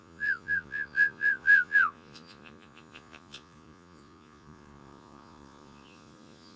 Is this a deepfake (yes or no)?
yes